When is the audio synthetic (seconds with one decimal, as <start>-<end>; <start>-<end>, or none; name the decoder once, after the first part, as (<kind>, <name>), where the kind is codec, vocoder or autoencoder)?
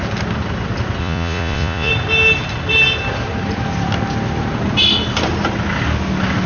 1.0-1.9 (vocoder, Vocos)